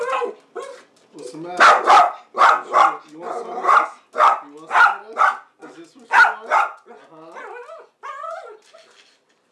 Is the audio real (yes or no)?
yes